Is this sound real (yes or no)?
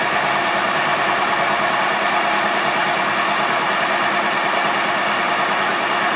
yes